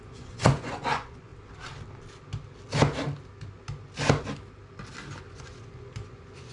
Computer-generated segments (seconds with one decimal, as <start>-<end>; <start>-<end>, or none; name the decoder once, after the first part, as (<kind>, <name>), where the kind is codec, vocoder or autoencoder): 0.0-1.3 (vocoder, Vocos); 5.2-6.5